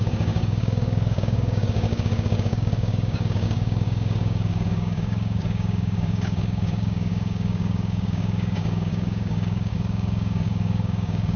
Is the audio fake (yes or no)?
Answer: yes